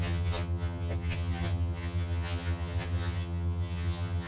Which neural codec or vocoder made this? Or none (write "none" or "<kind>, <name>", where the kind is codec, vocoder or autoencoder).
vocoder, HiFi-GAN